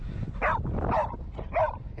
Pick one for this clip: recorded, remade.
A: recorded